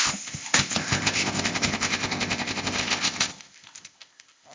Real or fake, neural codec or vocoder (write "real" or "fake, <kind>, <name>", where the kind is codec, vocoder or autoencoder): fake, codec, ZipCodec